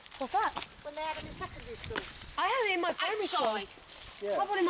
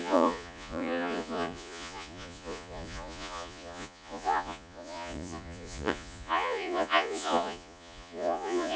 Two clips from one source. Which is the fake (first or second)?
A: second